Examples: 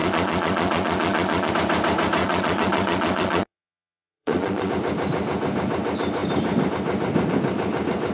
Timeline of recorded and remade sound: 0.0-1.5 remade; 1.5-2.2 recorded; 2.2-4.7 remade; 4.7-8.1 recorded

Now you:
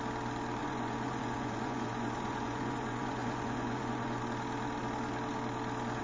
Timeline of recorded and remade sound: 0.0-0.6 recorded; 0.6-4.2 remade; 4.2-6.0 recorded

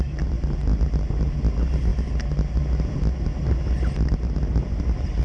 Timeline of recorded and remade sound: 0.0-5.2 recorded

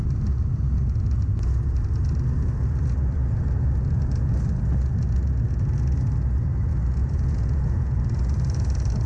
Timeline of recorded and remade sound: 0.0-7.0 recorded; 7.0-8.0 remade; 8.0-9.1 recorded

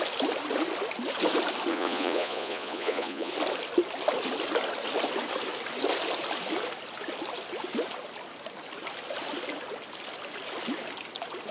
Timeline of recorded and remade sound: 0.0-1.7 recorded; 1.7-3.3 remade; 3.3-11.5 recorded